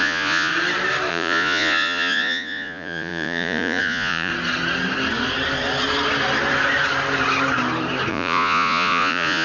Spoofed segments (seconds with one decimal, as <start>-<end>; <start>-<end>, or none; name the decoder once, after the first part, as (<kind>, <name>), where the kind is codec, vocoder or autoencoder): 0.0-0.5 (vocoder, Vocos); 1.1-4.3; 8.1-9.4